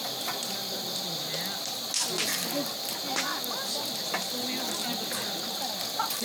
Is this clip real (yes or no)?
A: yes